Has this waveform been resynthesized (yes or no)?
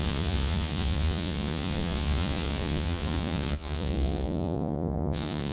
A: yes